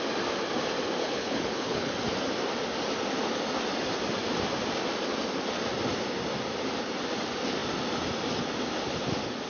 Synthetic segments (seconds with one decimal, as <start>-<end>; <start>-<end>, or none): 1.0-1.9

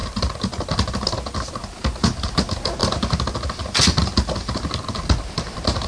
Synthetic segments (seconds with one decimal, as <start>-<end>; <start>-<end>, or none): none

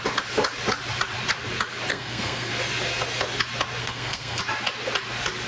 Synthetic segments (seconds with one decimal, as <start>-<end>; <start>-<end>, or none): 1.9-2.5; 3.8-4.4